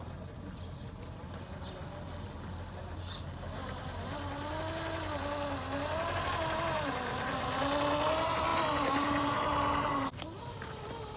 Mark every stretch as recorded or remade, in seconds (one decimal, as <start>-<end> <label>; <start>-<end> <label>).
0.0-11.2 recorded